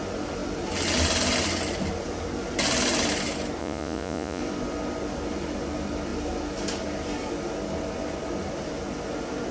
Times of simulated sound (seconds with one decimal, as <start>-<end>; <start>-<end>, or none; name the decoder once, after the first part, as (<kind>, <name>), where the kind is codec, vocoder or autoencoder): 3.6-4.4 (vocoder, Vocos)